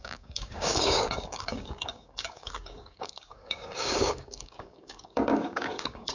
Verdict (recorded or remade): remade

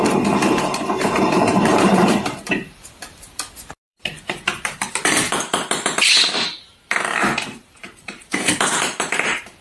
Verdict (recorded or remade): remade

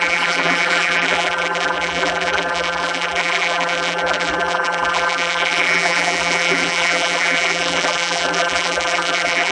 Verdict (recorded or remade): remade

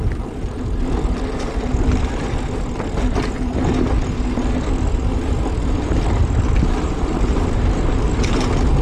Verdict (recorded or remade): recorded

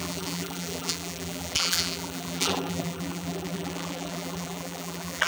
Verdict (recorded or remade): remade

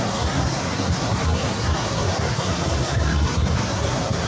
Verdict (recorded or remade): remade